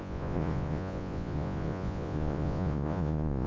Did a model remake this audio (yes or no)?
yes